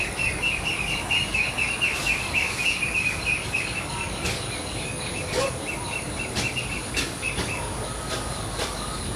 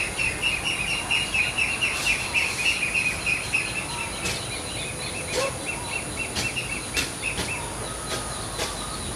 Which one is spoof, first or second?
first